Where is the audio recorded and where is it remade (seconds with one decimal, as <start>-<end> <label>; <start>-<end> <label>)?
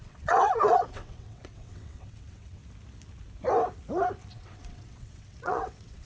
0.0-2.6 remade; 2.6-4.3 recorded; 4.3-6.0 remade